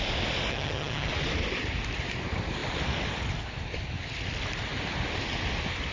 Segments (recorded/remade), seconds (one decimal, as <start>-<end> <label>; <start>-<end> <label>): 0.0-0.5 recorded; 0.5-1.1 remade; 1.1-5.9 recorded